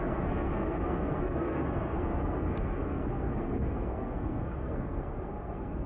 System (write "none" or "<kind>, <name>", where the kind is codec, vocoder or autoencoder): codec, SNAC